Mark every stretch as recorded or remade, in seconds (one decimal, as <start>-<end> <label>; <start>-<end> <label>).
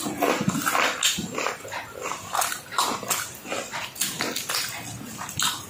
0.0-1.2 recorded; 1.2-1.7 remade; 1.7-5.7 recorded